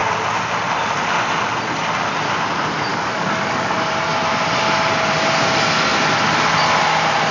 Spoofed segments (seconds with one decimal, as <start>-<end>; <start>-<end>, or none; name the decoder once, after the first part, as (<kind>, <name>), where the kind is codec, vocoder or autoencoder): 2.9-3.9 (codec, DAC)